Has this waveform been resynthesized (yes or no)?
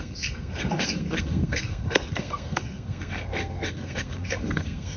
yes